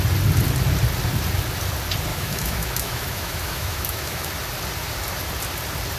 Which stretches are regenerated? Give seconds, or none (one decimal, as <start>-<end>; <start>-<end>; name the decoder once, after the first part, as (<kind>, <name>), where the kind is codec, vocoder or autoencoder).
2.1-4.3 (autoencoder, DAC-VAE)